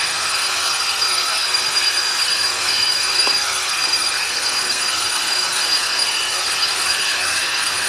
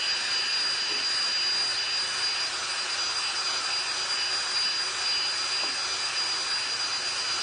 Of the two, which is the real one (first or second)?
second